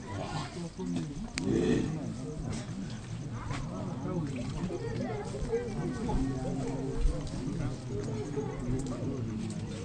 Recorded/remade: recorded